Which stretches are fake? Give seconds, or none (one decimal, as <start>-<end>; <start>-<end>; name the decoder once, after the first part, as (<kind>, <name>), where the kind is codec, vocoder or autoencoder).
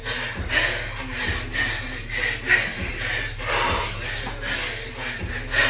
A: none